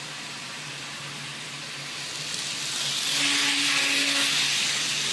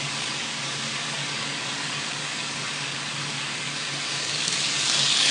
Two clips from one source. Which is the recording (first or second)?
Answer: first